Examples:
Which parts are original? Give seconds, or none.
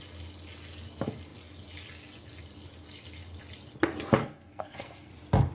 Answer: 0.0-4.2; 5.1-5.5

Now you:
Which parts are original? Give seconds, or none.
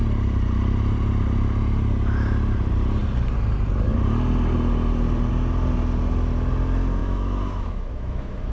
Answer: 0.0-7.0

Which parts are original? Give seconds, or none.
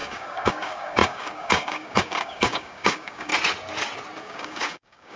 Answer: 3.3-4.2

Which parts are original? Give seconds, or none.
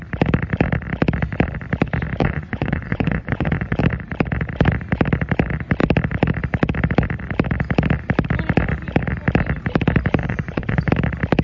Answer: 0.0-2.2; 3.8-10.2; 10.9-11.4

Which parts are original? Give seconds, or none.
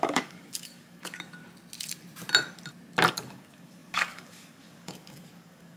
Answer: 1.4-3.1